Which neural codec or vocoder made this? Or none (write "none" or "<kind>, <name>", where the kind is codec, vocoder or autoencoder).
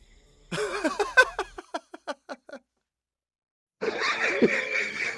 none